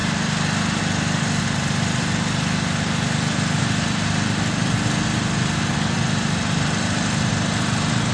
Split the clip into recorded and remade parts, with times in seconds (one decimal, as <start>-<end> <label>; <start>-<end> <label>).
0.0-8.1 recorded